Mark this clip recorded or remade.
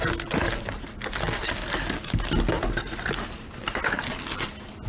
recorded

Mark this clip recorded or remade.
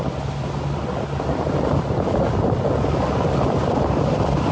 remade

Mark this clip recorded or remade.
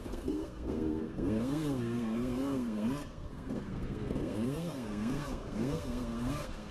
remade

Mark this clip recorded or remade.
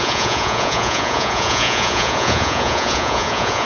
remade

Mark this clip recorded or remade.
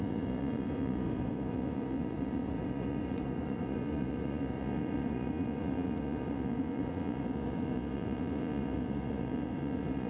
remade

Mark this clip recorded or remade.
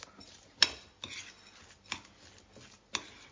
recorded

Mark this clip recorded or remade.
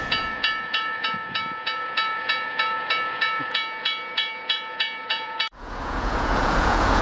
remade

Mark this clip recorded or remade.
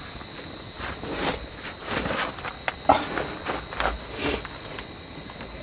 recorded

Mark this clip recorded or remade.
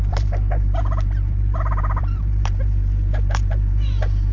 remade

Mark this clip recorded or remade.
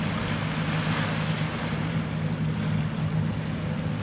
recorded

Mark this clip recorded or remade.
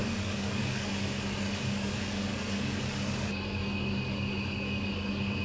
remade